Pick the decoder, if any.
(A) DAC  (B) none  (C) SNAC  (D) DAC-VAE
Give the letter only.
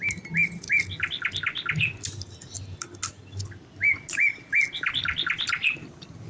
B